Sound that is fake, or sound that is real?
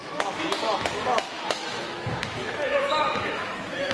fake